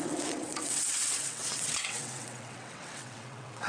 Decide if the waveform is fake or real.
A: fake